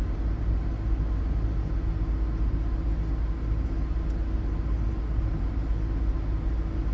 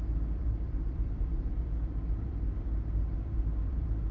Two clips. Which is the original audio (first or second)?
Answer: first